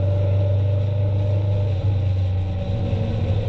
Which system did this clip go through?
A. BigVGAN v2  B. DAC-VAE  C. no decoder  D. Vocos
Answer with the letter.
C